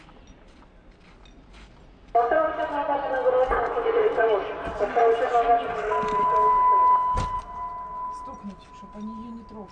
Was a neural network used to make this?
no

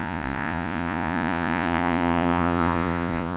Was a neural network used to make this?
yes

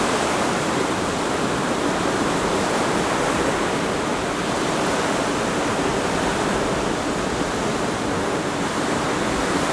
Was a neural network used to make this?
no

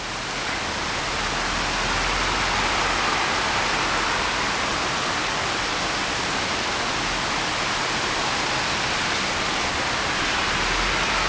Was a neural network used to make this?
no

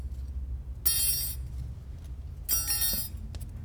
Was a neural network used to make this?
no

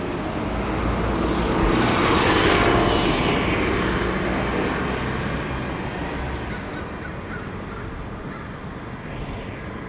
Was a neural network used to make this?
no